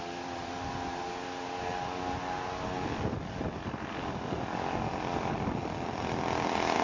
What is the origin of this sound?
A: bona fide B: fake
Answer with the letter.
A